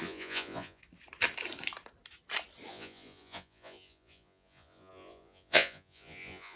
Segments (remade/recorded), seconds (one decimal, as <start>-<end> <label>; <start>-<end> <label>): 0.0-0.8 remade; 0.8-2.7 recorded; 2.7-6.6 remade